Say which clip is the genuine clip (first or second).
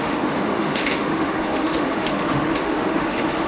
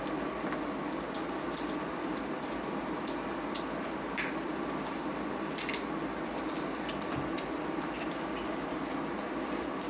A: second